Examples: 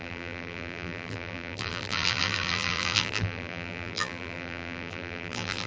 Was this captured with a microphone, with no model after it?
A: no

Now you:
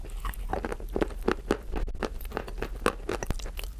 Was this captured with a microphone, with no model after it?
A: yes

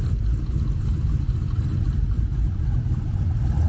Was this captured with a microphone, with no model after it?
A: no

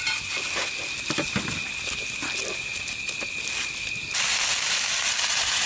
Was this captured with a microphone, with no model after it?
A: yes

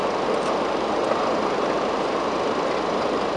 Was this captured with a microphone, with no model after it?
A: no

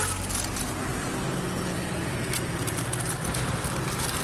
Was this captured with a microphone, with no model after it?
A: yes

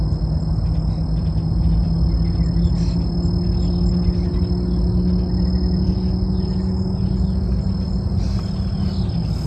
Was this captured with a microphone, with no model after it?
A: yes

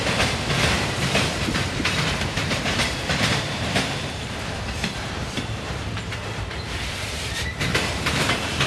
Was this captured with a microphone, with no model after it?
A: no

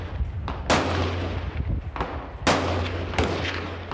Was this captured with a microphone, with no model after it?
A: yes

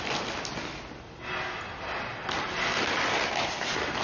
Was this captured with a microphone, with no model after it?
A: yes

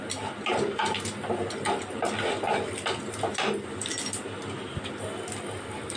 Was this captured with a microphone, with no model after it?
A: yes